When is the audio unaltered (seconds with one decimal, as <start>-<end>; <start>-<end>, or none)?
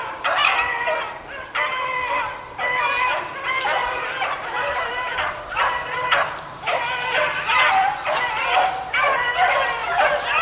0.4-2.8